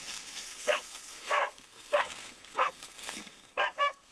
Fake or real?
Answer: fake